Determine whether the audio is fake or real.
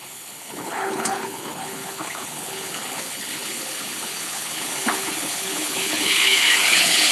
fake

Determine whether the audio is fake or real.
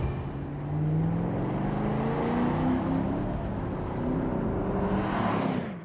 real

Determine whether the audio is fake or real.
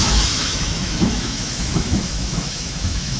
fake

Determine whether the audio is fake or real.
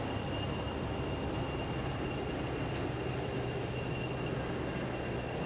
real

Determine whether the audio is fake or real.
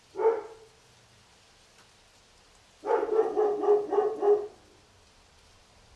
real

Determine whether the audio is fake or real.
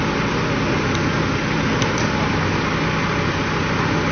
real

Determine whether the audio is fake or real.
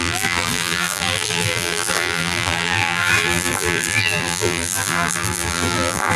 fake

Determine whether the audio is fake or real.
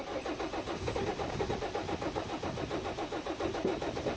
real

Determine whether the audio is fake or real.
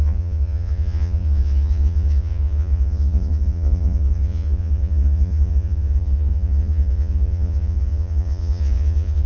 fake